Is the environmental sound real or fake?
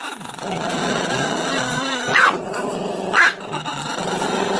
fake